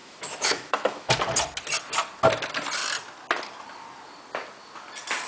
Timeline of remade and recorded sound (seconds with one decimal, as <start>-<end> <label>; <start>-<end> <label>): 0.0-1.1 remade; 1.1-5.3 recorded